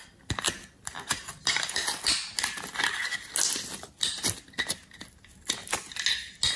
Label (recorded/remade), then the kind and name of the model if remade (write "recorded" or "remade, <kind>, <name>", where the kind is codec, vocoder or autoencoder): recorded